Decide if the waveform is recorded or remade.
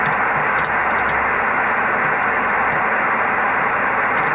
recorded